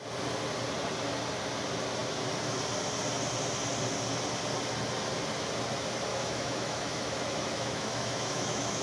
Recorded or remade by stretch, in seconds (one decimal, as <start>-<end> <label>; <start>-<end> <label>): 0.0-6.1 recorded; 6.1-8.8 remade